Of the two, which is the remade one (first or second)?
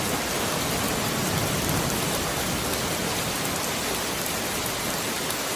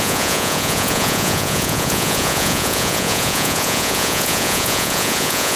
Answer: second